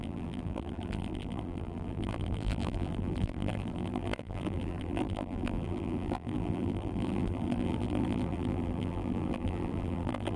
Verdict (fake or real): fake